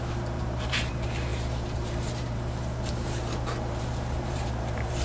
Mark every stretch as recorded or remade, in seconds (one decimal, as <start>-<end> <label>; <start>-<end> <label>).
0.0-5.0 remade